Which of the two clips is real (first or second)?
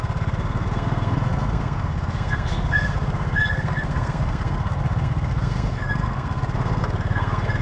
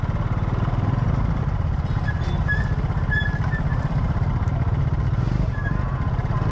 second